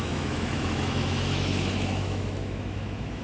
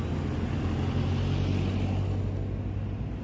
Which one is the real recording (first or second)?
second